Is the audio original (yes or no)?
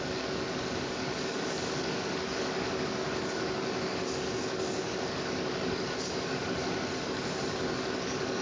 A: no